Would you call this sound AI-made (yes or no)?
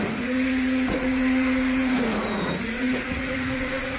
yes